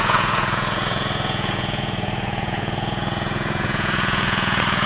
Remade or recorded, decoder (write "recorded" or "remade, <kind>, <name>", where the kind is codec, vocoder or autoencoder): remade, vocoder, Vocos